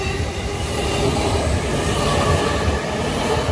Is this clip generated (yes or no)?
no